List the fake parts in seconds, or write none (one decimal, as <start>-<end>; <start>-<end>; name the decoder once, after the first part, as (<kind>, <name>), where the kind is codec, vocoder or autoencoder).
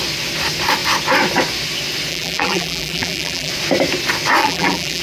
2.1-3.5 (vocoder, BigVGAN v2); 4.4-5.0